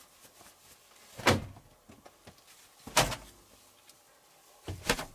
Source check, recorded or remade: recorded